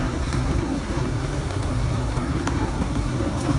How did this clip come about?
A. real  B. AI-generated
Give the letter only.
B